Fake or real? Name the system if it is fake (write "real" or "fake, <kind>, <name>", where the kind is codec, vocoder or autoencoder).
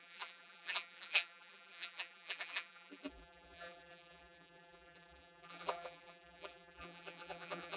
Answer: fake, vocoder, BigVGAN v2